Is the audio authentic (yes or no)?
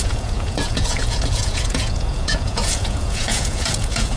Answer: no